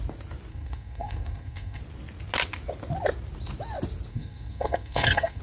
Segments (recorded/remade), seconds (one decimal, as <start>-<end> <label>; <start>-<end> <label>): 0.0-0.5 recorded; 0.5-1.8 remade; 1.8-4.1 recorded; 4.1-5.4 remade